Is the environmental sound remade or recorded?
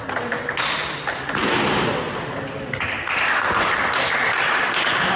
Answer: recorded